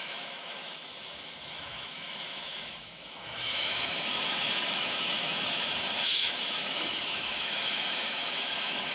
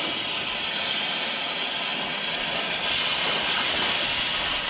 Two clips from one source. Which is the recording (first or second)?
second